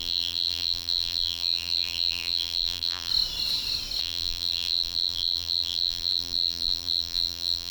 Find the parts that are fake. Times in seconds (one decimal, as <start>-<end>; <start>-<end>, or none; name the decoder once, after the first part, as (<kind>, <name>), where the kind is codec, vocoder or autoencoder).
0.0-3.1 (vocoder, BigVGAN v2); 4.0-7.7